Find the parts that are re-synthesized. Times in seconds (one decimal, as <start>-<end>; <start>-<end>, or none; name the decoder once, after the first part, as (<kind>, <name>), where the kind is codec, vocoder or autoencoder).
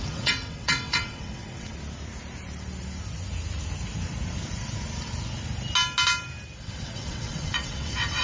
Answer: 0.0-1.7 (vocoder, WaveNeXt); 6.6-8.2